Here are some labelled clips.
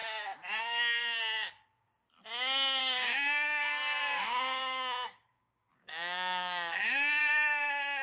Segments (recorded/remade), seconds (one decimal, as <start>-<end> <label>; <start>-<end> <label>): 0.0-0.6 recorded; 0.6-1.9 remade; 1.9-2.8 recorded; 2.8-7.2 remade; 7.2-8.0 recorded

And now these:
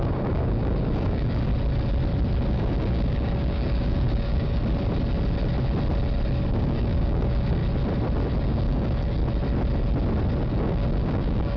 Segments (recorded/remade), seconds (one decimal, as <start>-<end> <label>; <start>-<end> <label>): 0.0-1.5 remade; 1.5-2.5 recorded; 2.5-4.6 remade; 4.6-6.5 recorded; 6.5-7.6 remade; 7.6-8.4 recorded; 8.4-9.2 remade; 9.2-10.4 recorded; 10.4-11.6 remade

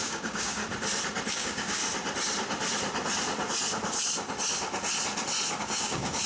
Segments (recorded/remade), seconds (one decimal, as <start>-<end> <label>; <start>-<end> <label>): 0.0-0.6 remade; 0.6-1.3 recorded; 1.3-1.8 remade; 1.8-5.6 recorded; 5.6-6.3 remade

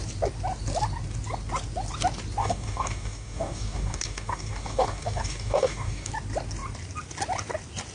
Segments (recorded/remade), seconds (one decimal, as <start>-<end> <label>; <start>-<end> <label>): 0.0-2.4 recorded; 2.4-6.1 remade; 6.1-7.9 recorded

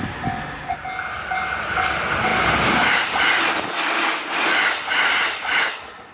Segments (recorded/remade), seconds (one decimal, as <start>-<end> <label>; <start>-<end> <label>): 0.0-6.1 recorded

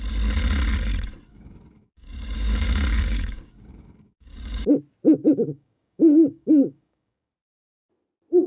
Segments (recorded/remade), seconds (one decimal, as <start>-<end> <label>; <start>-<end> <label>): 0.0-1.3 recorded; 1.3-4.8 remade; 4.8-5.2 recorded; 5.2-7.3 remade; 7.3-8.5 recorded

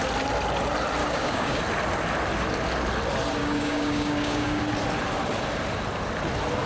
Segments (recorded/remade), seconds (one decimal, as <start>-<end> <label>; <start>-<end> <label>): 0.0-1.0 recorded; 1.0-1.6 remade; 1.6-3.4 recorded; 3.4-4.6 remade; 4.6-6.7 recorded